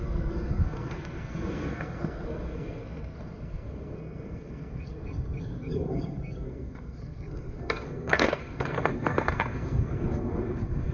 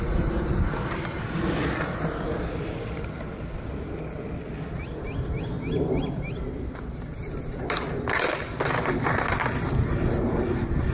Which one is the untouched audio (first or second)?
second